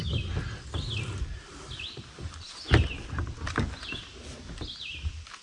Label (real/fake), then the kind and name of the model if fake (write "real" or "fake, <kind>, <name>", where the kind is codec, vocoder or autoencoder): real